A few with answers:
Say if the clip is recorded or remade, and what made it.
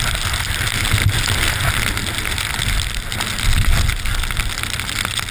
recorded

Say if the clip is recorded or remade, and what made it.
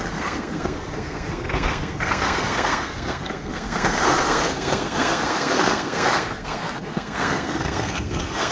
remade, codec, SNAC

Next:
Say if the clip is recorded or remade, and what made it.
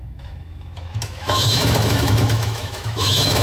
remade, autoencoder, DAC-VAE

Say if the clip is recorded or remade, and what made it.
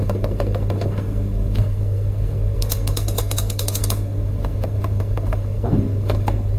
remade, codec, SNAC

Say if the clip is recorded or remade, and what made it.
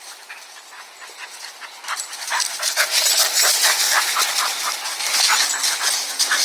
recorded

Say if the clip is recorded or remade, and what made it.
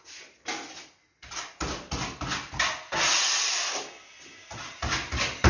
recorded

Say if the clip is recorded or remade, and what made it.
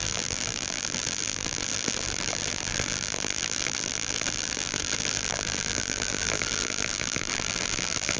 remade, vocoder, BigVGAN v2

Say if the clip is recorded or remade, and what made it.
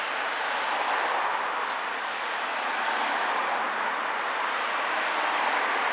recorded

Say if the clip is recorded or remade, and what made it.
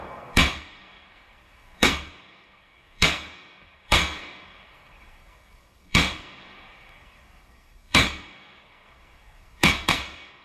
remade, codec, SNAC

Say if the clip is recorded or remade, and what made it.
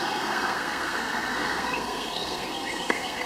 remade, codec, SNAC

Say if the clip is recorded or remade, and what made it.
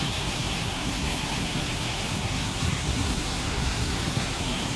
remade, codec, SNAC